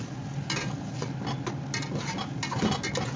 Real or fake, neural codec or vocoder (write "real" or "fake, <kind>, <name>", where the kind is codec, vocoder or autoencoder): real